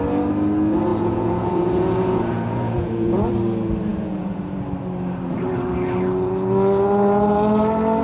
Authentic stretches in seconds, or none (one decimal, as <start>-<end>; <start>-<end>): 0.0-0.9; 3.3-3.9; 4.4-8.0